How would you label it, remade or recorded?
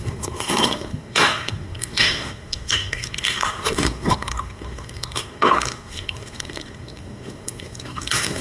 remade